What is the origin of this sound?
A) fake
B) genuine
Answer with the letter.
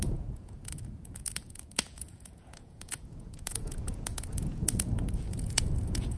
A